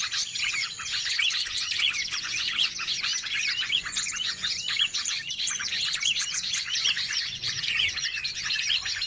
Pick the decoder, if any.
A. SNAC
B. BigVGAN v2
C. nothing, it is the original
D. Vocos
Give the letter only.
D